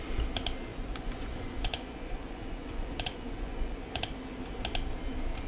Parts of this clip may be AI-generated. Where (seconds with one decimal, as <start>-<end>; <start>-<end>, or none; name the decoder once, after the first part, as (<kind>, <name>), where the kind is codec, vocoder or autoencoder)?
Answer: 0.7-4.0 (vocoder, Vocos)

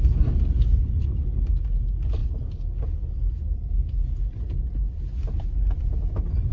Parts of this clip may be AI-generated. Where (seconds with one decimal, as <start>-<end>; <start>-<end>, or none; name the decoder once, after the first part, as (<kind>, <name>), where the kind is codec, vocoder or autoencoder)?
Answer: none

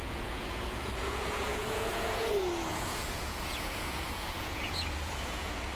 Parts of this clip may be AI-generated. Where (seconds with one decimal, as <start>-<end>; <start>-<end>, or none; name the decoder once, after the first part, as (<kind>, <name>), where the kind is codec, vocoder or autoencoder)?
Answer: 0.0-2.3 (vocoder, Vocos); 2.7-5.7

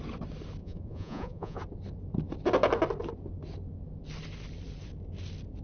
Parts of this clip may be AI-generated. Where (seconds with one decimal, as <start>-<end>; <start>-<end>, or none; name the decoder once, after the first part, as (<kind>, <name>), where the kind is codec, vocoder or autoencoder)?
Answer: 0.6-1.6 (vocoder, Vocos)

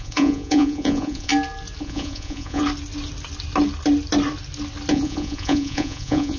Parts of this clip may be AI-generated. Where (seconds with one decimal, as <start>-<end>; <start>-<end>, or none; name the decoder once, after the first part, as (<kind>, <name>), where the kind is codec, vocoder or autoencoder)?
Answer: 0.0-1.3 (vocoder, Vocos); 1.8-2.6; 4.9-6.4

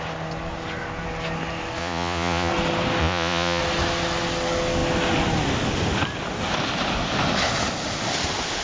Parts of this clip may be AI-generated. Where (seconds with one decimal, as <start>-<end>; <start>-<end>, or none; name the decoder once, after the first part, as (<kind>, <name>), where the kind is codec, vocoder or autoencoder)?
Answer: 1.8-2.5 (vocoder, Vocos); 3.0-3.6

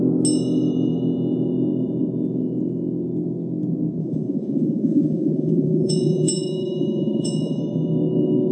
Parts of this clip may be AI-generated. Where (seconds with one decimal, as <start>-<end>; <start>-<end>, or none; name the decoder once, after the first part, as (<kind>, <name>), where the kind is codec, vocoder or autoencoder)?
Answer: 4.0-7.6 (vocoder, Vocos)

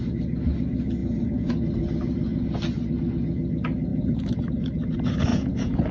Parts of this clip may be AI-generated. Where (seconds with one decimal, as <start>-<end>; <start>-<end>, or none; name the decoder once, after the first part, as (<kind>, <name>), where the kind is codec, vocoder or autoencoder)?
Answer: 1.0-1.5 (vocoder, Vocos); 3.9-4.4; 5.3-5.9